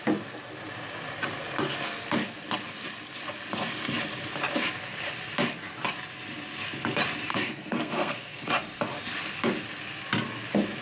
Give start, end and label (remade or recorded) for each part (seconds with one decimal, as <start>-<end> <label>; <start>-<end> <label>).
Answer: 0.0-7.3 recorded; 7.3-8.5 remade; 8.5-10.8 recorded